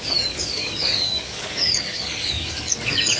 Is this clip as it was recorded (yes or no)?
no